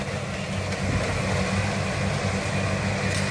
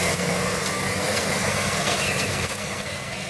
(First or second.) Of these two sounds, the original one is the first